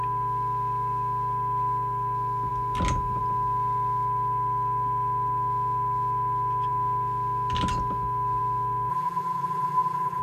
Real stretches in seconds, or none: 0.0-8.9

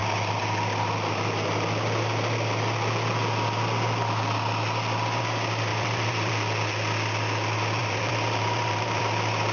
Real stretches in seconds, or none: 0.0-5.7; 6.3-7.8; 9.0-9.5